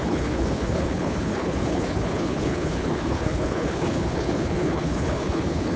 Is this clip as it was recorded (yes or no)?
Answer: no